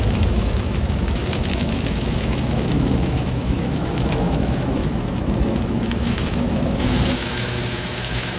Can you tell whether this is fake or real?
fake